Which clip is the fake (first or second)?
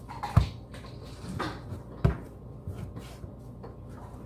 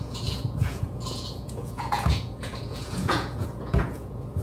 second